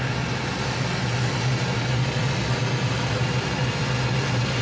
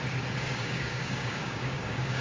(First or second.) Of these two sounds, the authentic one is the first